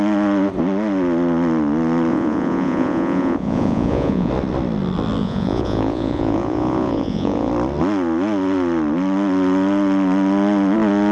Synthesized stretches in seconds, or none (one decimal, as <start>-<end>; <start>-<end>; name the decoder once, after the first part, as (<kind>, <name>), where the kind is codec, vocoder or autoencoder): 2.1-4.3 (vocoder, Vocos); 5.2-7.5